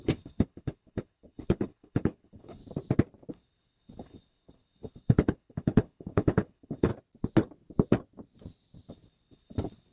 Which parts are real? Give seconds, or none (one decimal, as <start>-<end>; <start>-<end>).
2.6-3.3; 6.9-8.9